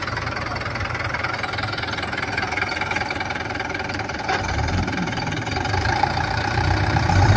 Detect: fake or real fake